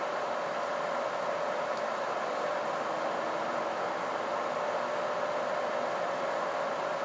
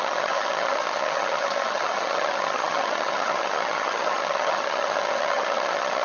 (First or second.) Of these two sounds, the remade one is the second